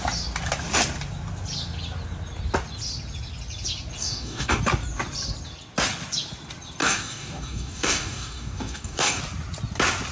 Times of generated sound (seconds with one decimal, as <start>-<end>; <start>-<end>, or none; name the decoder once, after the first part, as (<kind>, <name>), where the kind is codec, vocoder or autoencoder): 4.0-4.6 (codec, DAC); 6.8-9.2